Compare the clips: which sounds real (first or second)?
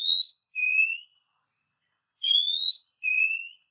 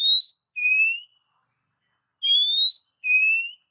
second